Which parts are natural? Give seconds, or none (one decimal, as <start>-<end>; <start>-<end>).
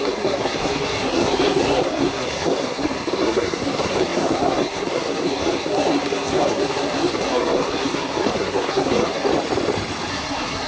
9.3-10.1